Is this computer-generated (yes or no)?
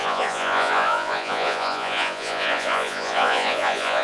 yes